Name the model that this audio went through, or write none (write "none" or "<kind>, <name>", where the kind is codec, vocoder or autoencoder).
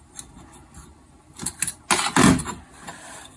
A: none